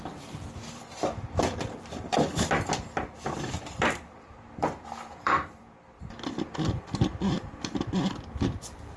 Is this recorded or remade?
remade